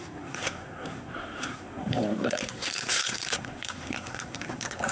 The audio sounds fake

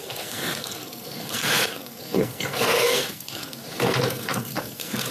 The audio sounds fake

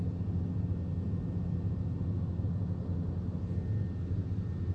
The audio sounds real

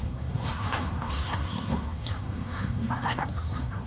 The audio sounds fake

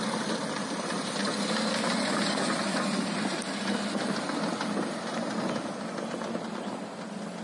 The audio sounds real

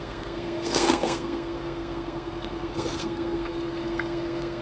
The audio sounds fake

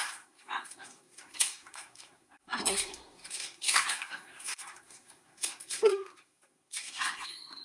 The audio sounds fake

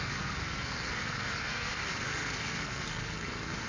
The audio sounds fake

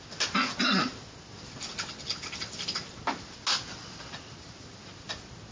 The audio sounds real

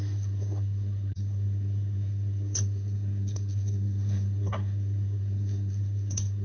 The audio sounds fake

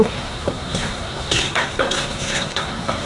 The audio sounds fake